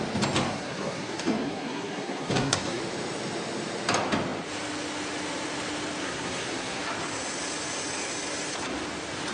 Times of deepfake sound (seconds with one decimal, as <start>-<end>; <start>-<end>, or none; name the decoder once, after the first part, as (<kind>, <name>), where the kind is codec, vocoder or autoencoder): 0.5-2.8 (codec, SNAC); 6.0-6.8